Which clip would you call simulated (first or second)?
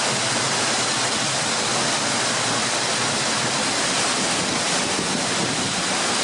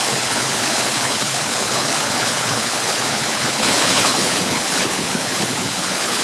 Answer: second